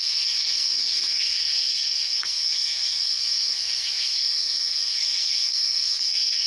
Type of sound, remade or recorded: remade